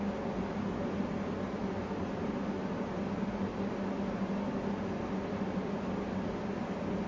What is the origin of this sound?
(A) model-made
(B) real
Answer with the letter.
B